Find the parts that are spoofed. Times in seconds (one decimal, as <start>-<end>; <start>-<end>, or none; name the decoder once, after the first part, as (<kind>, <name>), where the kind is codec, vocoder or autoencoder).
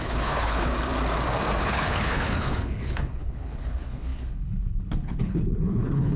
0.0-0.7 (codec, HILCodec); 1.6-6.2